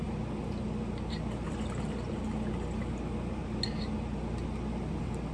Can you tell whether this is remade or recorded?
recorded